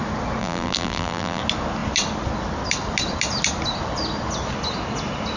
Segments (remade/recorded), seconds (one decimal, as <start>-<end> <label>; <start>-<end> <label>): 0.0-0.4 recorded; 0.4-1.4 remade; 1.4-5.4 recorded